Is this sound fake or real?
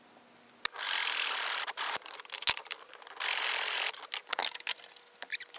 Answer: real